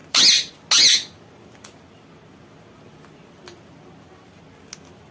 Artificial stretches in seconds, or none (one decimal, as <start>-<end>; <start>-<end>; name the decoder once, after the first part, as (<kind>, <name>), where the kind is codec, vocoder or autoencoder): none